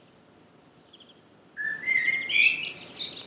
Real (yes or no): yes